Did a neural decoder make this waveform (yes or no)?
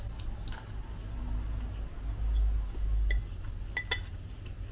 no